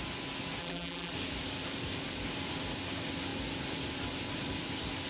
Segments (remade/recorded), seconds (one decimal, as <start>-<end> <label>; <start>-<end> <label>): 0.0-0.6 recorded; 0.6-1.1 remade; 1.1-5.1 recorded